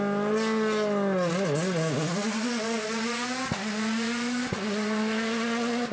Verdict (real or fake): real